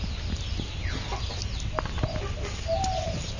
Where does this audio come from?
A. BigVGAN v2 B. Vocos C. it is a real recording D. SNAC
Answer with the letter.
C